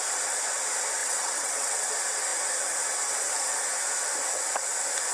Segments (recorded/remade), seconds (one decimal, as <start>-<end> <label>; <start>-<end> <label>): 0.0-1.0 recorded; 1.0-1.7 remade; 1.7-5.1 recorded

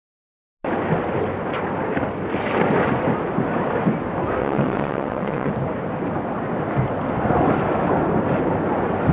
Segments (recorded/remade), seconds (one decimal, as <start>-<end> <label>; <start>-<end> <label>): 0.0-4.4 recorded; 4.4-5.5 remade; 5.5-9.1 recorded

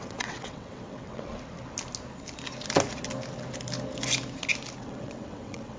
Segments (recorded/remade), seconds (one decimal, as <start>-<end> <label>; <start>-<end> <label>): 0.0-1.3 remade; 1.3-4.8 recorded; 4.8-5.8 remade